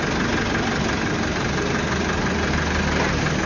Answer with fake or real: real